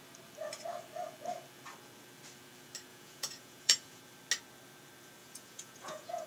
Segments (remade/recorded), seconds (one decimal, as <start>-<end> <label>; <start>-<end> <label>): 0.0-2.9 recorded; 2.9-4.0 remade; 4.0-5.2 recorded; 5.2-6.3 remade